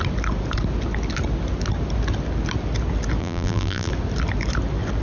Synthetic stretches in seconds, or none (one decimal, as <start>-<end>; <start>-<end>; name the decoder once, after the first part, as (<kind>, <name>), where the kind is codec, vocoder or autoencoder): 3.2-3.9 (vocoder, BigVGAN v2)